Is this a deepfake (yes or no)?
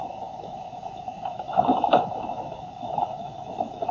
yes